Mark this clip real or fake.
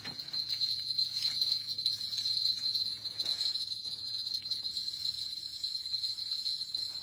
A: fake